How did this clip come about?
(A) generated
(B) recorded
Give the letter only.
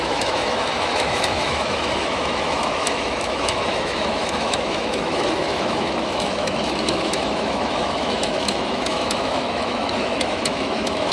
A